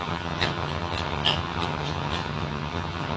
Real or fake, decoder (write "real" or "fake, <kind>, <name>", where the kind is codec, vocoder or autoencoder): fake, vocoder, HiFi-GAN